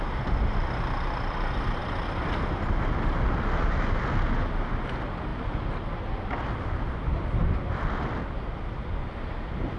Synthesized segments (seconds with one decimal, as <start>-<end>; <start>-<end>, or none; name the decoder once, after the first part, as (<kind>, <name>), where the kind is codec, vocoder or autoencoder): none